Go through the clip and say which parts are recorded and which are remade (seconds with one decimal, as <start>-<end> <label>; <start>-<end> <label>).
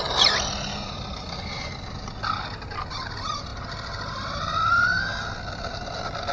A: 0.0-6.3 recorded